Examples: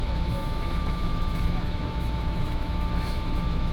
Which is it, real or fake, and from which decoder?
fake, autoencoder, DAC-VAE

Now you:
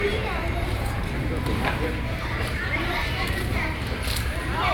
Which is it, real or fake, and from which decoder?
fake, vocoder, BigVGAN v2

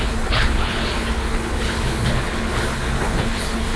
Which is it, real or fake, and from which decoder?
fake, codec, HILCodec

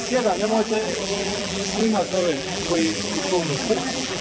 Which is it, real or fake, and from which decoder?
fake, vocoder, BigVGAN v2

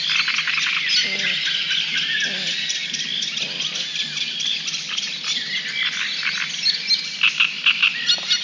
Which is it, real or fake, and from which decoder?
real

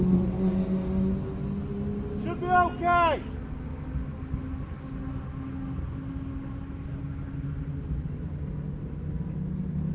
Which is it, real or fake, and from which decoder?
real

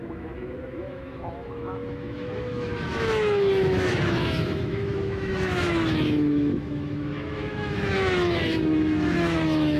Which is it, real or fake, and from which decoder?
fake, autoencoder, DAC-VAE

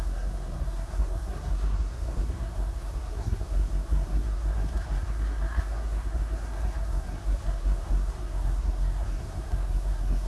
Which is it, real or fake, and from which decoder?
fake, codec, SNAC